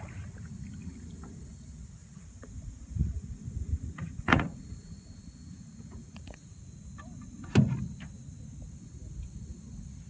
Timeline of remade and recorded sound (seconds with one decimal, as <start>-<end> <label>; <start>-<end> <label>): 0.0-2.0 recorded; 2.0-6.9 remade; 6.9-10.1 recorded